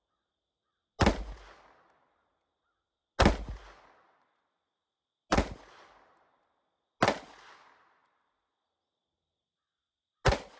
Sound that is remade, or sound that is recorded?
recorded